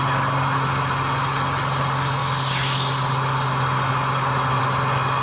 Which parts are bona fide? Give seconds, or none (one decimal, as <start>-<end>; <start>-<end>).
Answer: 0.0-5.2